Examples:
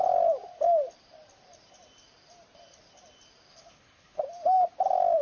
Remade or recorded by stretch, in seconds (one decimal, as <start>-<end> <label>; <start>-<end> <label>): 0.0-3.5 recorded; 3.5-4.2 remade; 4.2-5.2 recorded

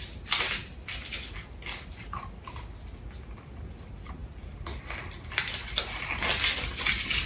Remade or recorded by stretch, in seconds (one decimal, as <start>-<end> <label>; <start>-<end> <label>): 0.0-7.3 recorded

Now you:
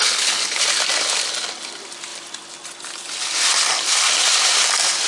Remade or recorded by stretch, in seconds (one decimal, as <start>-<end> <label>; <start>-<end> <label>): 0.0-0.6 remade; 0.6-5.1 recorded